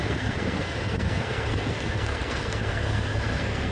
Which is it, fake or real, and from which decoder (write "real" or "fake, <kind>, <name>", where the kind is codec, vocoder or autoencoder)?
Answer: fake, codec, SNAC